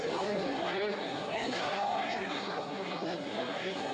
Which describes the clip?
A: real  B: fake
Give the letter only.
B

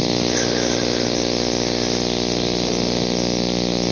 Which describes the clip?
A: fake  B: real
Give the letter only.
B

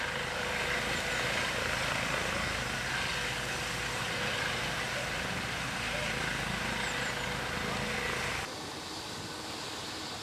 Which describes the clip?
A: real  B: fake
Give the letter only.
A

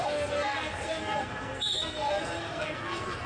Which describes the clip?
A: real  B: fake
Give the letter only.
B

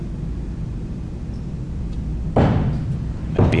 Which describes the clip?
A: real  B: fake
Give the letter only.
A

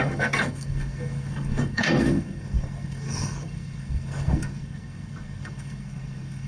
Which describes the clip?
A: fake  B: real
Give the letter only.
A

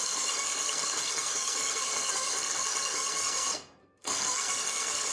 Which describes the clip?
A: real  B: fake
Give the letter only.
B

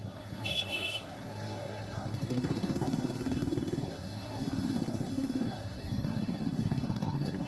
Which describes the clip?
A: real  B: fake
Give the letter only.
B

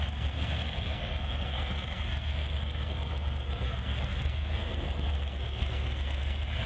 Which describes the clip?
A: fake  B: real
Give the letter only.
A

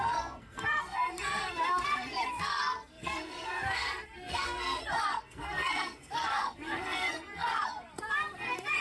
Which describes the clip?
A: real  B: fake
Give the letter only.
B